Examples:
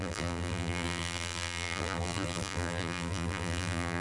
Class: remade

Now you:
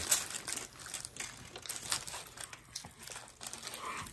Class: recorded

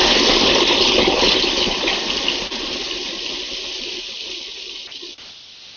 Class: recorded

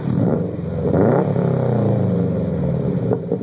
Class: remade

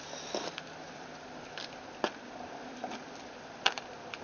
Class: remade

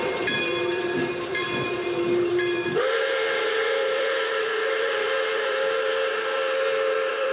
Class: remade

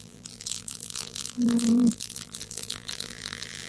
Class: remade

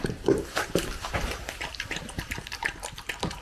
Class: remade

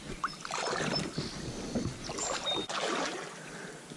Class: recorded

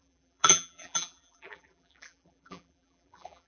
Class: remade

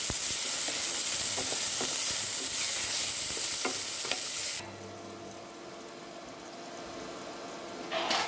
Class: recorded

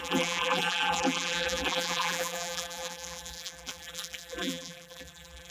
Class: remade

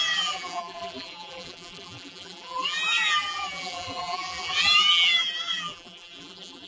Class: remade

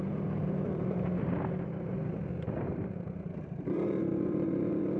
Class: remade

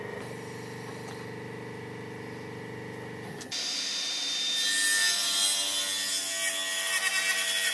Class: recorded